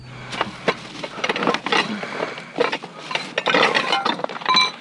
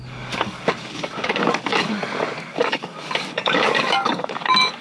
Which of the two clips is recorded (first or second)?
first